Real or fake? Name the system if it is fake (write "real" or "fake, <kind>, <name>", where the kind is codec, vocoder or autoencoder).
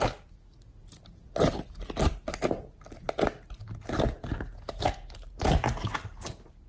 real